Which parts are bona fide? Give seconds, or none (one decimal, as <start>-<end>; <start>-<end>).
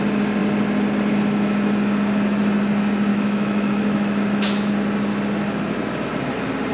0.0-3.1; 4.7-6.7